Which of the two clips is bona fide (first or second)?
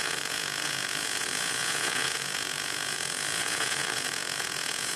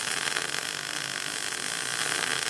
second